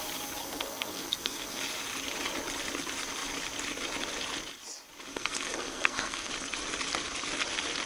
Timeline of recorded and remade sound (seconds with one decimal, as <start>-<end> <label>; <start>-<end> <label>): 0.0-0.4 recorded; 0.4-1.6 remade; 1.6-5.1 recorded; 5.1-6.3 remade; 6.3-7.9 recorded